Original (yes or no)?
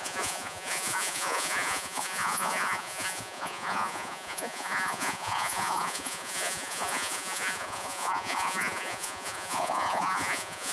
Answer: no